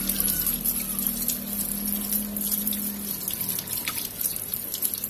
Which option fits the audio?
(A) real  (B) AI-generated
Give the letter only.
A